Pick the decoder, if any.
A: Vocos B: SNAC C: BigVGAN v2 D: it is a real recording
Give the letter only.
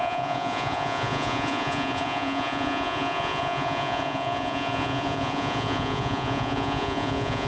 A